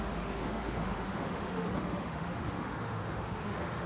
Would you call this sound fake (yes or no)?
yes